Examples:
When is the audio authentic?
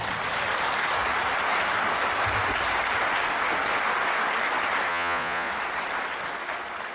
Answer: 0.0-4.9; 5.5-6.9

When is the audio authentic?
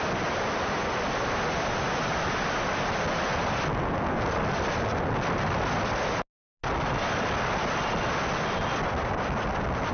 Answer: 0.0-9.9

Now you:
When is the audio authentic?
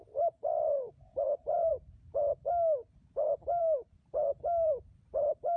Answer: 1.7-3.6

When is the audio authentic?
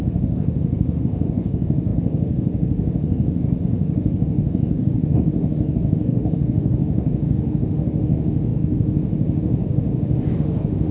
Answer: none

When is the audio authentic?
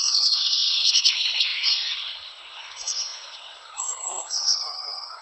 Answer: none